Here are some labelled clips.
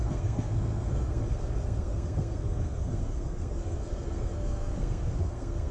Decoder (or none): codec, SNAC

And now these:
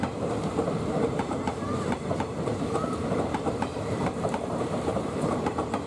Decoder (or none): vocoder, BigVGAN v2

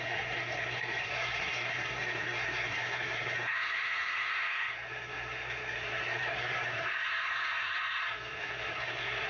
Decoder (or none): codec, SNAC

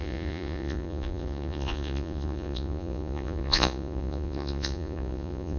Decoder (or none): vocoder, Vocos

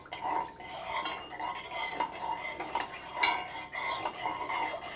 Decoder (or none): none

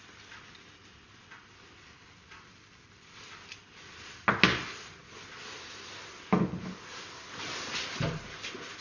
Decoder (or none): none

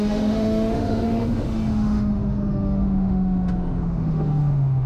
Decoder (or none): autoencoder, DAC-VAE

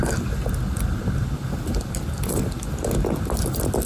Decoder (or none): none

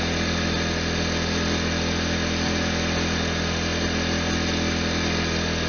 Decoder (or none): none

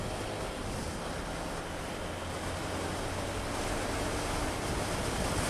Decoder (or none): none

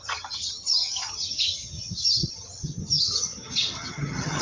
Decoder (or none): vocoder, HiFi-GAN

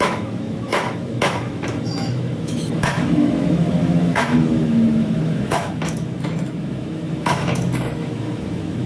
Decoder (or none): autoencoder, DAC-VAE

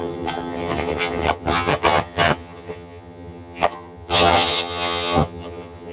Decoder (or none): vocoder, HiFi-GAN